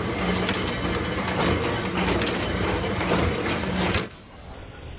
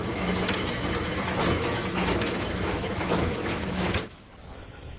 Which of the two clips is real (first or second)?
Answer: first